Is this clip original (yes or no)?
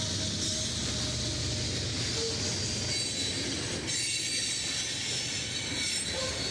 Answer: yes